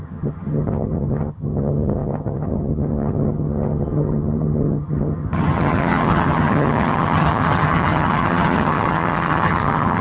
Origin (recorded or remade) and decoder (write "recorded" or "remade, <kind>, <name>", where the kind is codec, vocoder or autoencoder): remade, vocoder, HiFi-GAN